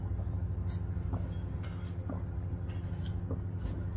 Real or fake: real